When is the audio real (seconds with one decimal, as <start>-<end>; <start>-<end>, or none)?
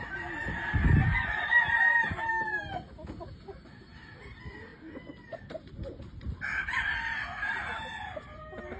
0.0-8.8